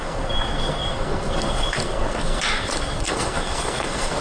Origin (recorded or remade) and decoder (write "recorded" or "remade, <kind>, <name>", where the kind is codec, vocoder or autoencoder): remade, codec, SNAC